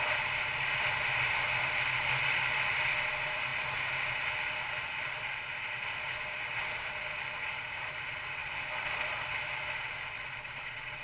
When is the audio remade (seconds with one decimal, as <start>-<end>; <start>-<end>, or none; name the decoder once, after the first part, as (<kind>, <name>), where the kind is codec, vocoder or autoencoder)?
none